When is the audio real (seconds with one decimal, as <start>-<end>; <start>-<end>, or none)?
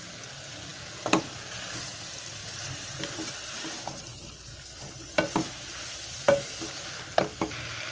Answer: 0.0-2.4; 4.9-7.9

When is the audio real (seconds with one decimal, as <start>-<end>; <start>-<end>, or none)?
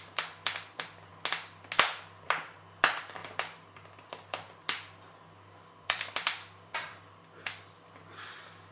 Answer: 1.1-1.8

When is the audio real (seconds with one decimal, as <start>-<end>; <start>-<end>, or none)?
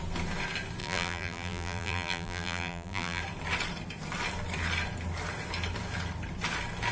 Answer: 0.0-0.8; 3.2-6.9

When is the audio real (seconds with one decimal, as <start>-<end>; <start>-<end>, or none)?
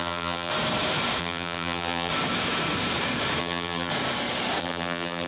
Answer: 0.5-1.2; 2.1-3.4; 3.9-4.6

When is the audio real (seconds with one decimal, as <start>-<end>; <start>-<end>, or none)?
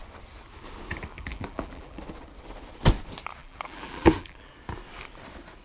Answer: 0.0-1.1; 2.0-3.4; 4.5-5.6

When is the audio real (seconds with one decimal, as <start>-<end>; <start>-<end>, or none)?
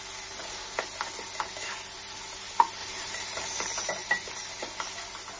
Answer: 0.0-2.8; 3.9-5.4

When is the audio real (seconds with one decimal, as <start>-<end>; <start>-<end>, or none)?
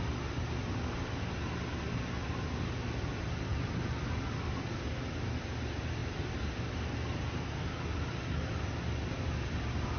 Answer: 0.0-3.5; 4.9-10.0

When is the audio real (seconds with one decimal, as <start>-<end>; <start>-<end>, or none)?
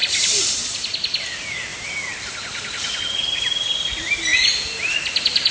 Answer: 0.6-1.7; 3.0-4.3